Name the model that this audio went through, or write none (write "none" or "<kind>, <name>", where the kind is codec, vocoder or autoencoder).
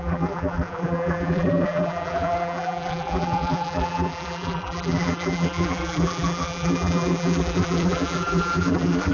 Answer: vocoder, BigVGAN v2